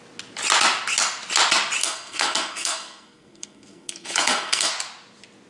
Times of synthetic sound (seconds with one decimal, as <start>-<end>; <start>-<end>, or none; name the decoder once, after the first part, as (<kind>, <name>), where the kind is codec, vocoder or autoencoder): 1.8-4.7 (codec, SNAC)